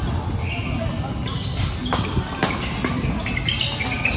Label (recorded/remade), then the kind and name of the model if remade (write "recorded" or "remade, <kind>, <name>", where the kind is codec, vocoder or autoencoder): recorded